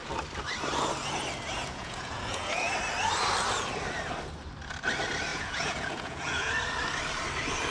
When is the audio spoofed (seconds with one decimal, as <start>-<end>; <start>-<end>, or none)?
1.6-2.7; 5.3-6.5

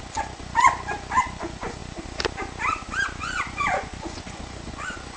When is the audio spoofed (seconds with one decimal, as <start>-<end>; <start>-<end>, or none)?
0.0-1.8; 3.2-5.2

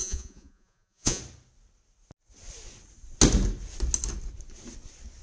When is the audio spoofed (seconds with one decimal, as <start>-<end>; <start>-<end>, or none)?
0.0-1.2

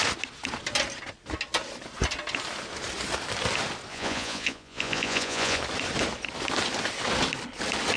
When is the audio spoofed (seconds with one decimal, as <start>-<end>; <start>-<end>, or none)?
3.9-5.6

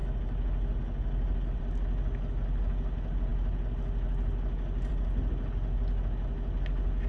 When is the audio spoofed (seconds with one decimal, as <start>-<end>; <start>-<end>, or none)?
none